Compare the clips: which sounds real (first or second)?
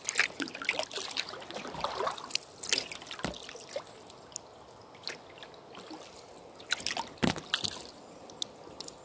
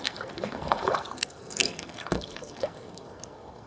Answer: first